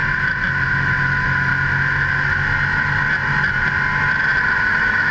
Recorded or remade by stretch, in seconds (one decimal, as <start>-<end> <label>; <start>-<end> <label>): 0.0-1.0 recorded; 1.0-1.5 remade; 1.5-4.6 recorded; 4.6-5.1 remade